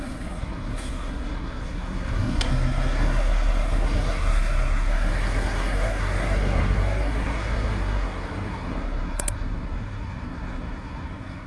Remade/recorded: remade